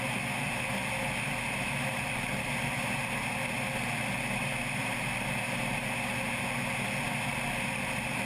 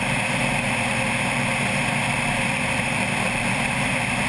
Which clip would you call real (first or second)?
first